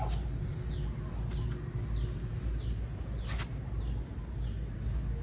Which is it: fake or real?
real